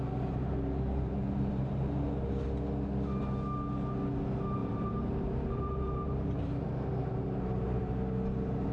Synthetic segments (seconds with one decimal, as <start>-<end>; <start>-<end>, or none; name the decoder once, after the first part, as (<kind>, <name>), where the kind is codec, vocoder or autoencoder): 0.4-2.0 (vocoder, BigVGAN v2); 4.6-7.9